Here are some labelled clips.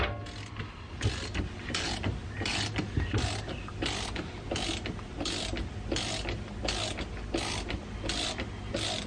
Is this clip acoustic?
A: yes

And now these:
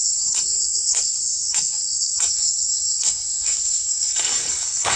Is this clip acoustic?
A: no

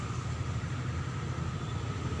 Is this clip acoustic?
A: yes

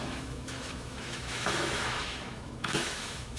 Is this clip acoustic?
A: no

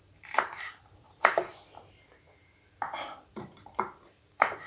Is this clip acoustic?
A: no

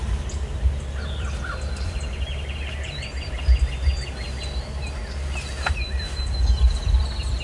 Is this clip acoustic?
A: yes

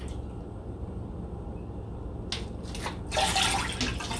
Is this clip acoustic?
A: yes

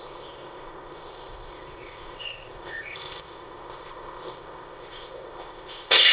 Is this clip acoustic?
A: no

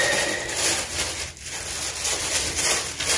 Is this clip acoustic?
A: yes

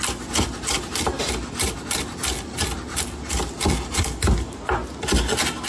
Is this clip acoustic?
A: yes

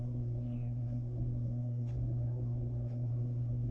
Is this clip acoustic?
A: no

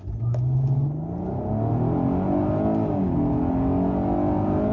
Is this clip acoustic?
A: yes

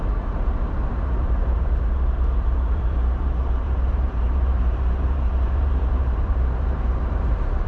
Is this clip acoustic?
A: no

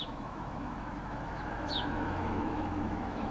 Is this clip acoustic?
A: no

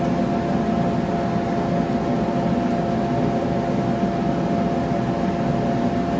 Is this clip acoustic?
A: yes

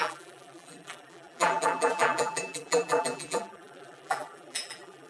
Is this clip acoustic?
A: no